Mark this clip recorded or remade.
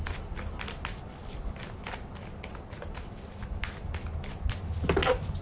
recorded